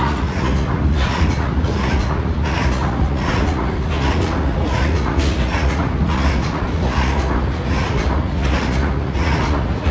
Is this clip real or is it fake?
fake